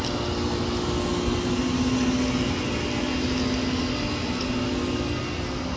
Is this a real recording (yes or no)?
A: yes